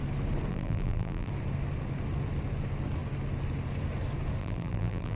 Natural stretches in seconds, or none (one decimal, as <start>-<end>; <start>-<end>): 0.0-0.5; 1.3-4.4